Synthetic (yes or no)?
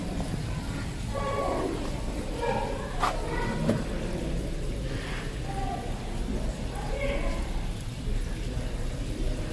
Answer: no